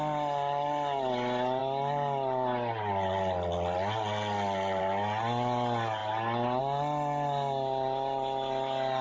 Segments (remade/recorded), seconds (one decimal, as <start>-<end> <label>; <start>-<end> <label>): 0.0-9.0 recorded